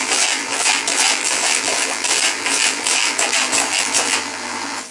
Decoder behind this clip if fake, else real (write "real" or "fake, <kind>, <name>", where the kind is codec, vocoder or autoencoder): fake, vocoder, BigVGAN v2